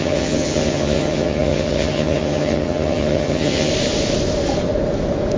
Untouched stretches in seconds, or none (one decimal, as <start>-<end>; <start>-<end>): 3.7-5.4